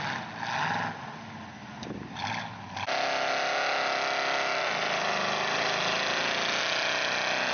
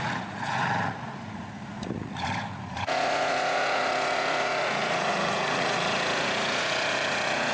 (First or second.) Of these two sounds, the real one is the first